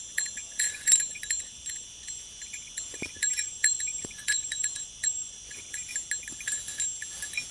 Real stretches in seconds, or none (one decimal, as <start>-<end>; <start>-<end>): 5.9-7.5